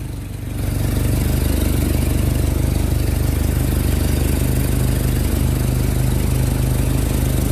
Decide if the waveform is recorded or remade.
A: recorded